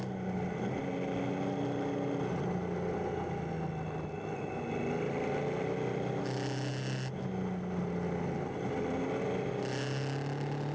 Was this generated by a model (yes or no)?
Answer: no